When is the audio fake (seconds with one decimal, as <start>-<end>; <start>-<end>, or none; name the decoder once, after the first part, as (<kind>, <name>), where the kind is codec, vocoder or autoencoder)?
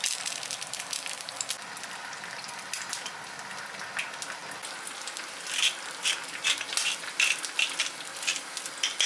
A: none